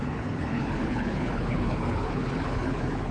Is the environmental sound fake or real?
fake